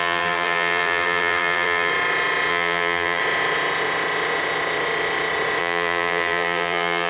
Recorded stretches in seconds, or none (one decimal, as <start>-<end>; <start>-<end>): 1.9-2.5; 3.2-5.6